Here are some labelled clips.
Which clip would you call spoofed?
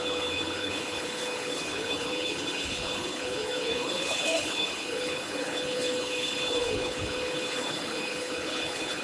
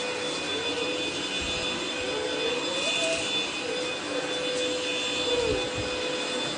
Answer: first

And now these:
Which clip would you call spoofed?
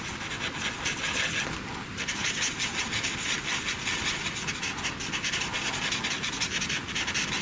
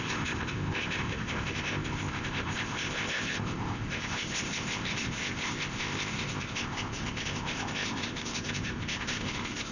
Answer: second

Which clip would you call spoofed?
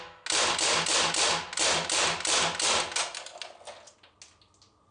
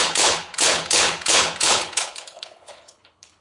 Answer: second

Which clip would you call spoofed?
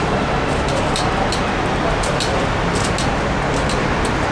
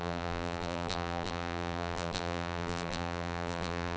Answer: second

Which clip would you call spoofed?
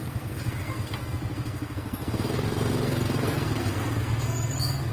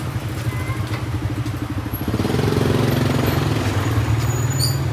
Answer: first